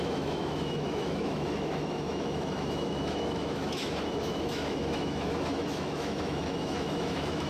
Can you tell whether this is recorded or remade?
remade